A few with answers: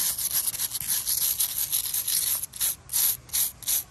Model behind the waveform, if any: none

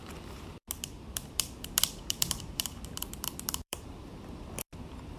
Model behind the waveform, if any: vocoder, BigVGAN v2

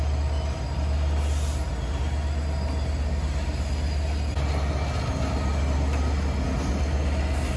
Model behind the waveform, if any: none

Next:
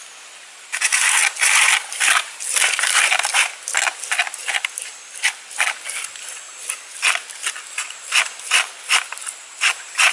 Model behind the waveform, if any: none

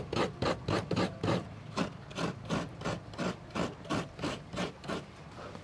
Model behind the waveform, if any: vocoder, BigVGAN v2